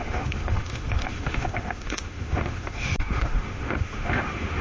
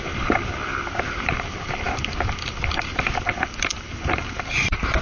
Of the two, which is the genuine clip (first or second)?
second